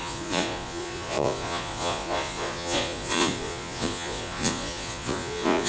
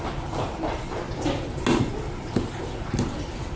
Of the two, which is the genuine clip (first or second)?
second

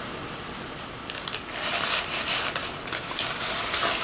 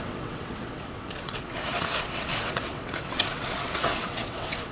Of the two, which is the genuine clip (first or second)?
first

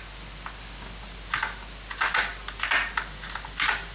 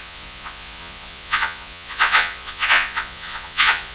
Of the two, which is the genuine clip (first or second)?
first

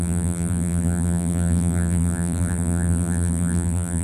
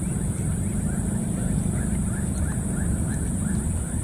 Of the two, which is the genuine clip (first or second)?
second